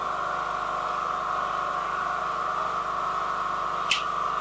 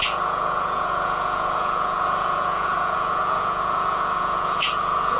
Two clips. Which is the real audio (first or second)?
first